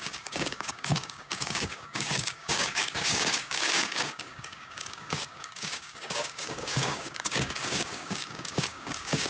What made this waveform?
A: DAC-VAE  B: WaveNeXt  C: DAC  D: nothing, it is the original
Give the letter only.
C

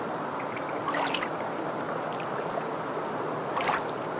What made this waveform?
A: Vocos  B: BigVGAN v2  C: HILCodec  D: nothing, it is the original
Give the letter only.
D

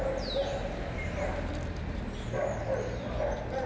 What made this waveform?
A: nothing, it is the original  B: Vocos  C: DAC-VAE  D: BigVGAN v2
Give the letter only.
A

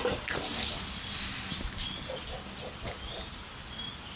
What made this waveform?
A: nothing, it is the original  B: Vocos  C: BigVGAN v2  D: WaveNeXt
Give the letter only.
A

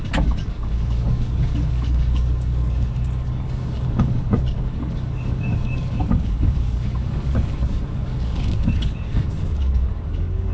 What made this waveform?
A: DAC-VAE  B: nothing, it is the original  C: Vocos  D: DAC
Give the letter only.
D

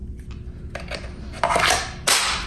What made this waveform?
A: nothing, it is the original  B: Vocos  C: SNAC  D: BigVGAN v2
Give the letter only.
A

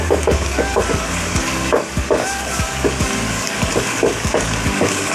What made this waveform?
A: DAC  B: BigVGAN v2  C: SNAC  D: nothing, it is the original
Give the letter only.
A